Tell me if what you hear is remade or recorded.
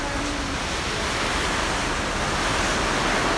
recorded